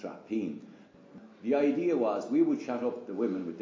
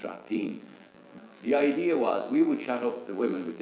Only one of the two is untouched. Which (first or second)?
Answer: first